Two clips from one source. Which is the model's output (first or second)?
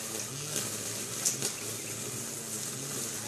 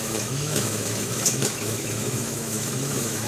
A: second